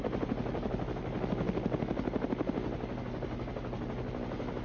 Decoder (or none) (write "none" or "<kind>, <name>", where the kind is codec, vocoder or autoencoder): none